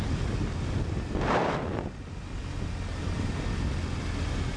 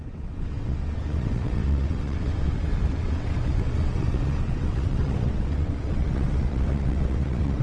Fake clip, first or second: second